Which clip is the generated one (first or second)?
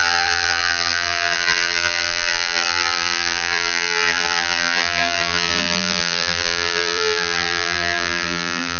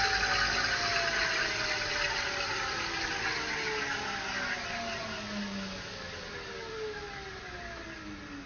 first